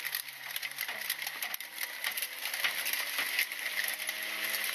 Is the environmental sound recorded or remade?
recorded